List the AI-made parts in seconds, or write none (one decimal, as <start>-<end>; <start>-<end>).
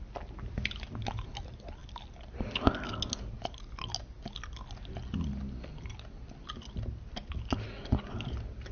none